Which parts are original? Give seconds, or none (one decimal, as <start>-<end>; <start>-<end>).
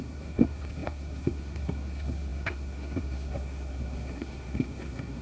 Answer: none